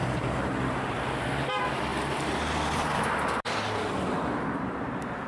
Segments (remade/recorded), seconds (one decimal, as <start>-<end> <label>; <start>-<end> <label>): 0.0-0.6 remade; 0.6-1.9 recorded; 1.9-3.8 remade; 3.8-5.3 recorded